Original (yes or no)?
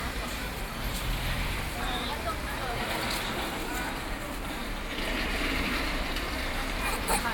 no